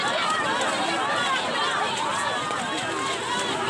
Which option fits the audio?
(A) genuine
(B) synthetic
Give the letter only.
A